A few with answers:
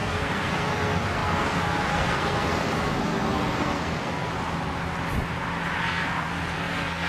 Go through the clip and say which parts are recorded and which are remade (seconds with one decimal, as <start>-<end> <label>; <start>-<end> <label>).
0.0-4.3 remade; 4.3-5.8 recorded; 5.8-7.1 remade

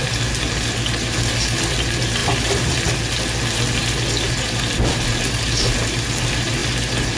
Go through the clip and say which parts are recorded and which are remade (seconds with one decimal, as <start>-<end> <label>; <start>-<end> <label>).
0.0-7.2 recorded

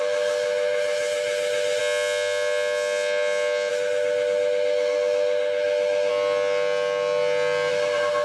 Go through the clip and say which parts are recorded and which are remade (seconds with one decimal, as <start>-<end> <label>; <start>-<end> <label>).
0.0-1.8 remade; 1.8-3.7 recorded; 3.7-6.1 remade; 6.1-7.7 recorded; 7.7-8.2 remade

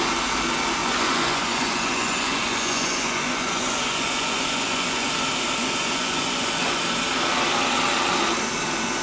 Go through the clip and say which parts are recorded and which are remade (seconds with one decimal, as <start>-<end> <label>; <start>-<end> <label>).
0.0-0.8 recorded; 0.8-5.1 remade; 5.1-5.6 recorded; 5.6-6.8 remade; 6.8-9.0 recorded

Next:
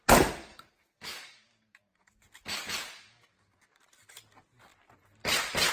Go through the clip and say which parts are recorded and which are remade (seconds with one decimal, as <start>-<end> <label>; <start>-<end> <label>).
0.0-0.4 recorded; 0.4-3.8 remade; 3.8-5.7 recorded